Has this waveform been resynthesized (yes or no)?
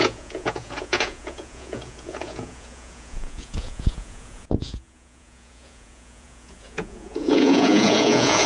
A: yes